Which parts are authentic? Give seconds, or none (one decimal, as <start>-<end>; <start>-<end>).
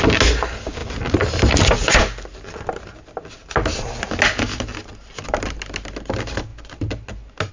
0.0-7.5